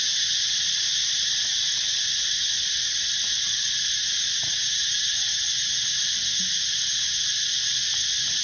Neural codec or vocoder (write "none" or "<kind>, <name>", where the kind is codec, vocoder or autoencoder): none